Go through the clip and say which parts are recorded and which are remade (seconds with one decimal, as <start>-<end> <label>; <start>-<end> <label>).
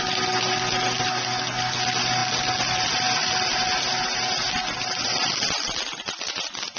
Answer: 0.0-6.8 recorded